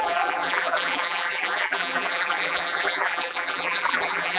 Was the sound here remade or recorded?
remade